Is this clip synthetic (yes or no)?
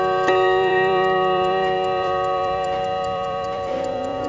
yes